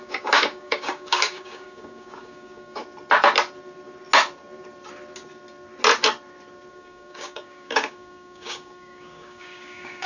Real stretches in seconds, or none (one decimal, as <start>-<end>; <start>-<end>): 2.8-6.7